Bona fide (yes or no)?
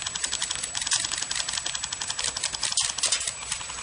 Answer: yes